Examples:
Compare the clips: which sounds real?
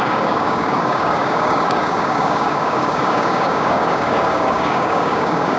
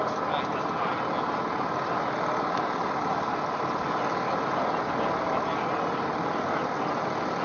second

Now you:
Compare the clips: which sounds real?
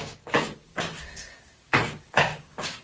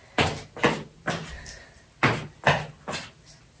second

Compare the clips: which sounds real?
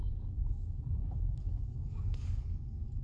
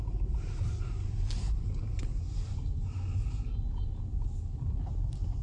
second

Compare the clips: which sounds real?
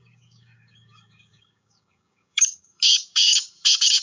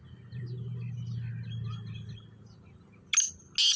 second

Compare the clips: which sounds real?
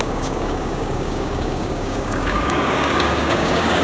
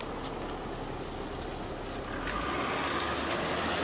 second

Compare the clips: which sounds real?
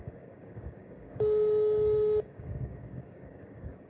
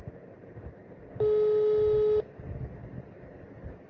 second